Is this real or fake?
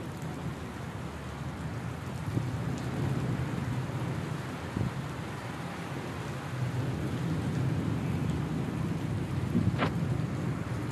real